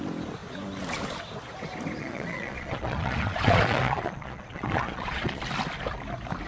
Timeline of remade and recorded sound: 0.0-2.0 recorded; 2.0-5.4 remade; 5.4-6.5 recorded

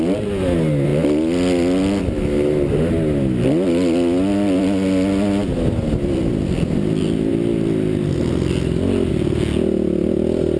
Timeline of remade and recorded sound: 0.0-10.6 recorded

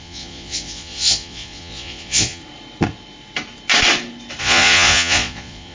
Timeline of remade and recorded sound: 0.0-2.4 remade; 2.4-4.4 recorded; 4.4-5.7 remade